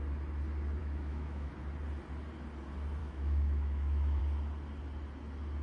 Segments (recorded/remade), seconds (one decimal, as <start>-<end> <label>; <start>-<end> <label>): 0.0-0.8 recorded; 0.8-1.5 remade; 1.5-3.0 recorded; 3.0-4.2 remade; 4.2-5.6 recorded